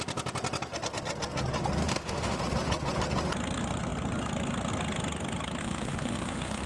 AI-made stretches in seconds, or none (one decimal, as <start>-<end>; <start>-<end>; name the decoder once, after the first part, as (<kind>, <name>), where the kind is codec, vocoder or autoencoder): 1.8-2.4 (autoencoder, DAC-VAE); 5.6-6.7